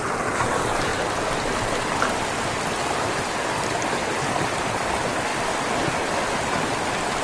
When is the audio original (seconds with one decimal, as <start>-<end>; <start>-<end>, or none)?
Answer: 0.9-4.5; 5.3-7.2